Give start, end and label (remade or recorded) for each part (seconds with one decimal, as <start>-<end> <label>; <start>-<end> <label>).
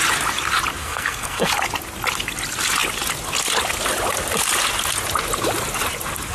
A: 0.0-0.8 recorded; 0.8-1.5 remade; 1.5-6.3 recorded